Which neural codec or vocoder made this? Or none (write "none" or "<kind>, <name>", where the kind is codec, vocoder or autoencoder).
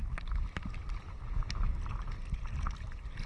vocoder, BigVGAN v2